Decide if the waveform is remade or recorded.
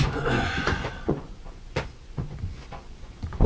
remade